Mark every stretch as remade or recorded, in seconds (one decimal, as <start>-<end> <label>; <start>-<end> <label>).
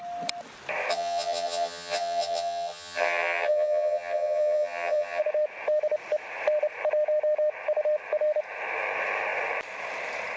0.0-0.9 recorded; 0.9-5.2 remade; 5.2-10.4 recorded